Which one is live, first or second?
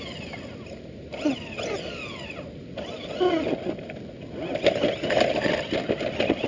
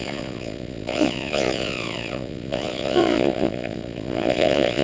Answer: first